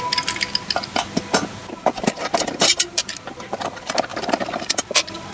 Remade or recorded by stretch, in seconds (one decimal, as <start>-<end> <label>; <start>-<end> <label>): 0.0-5.3 recorded